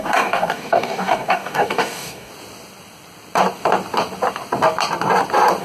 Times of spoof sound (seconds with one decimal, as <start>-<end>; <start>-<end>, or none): 0.0-2.3